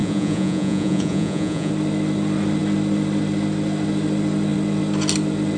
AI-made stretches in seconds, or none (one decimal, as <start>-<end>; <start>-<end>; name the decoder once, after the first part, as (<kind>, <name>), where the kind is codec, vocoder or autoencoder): 0.0-1.7 (vocoder, Vocos)